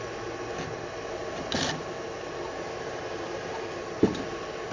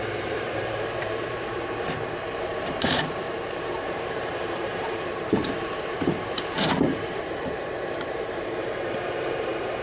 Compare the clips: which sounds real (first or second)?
first